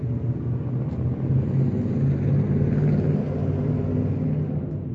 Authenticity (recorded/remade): recorded